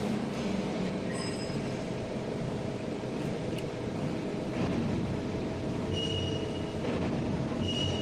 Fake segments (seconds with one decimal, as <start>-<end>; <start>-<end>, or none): 0.7-3.9